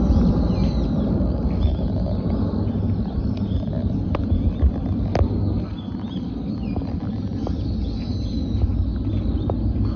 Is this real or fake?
real